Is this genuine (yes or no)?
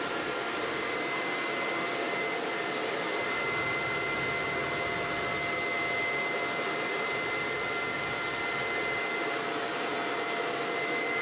yes